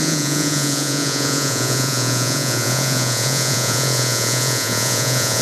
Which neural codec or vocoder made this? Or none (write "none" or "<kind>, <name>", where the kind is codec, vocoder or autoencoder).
vocoder, Vocos